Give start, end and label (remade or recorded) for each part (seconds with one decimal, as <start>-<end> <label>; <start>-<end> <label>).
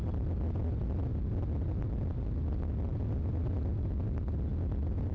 0.0-5.1 recorded